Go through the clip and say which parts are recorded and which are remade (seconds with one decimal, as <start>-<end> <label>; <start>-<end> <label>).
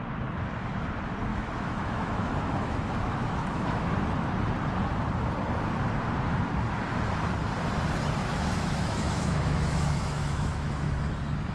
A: 0.0-1.3 recorded; 1.3-3.9 remade; 3.9-8.2 recorded; 8.2-10.9 remade; 10.9-11.5 recorded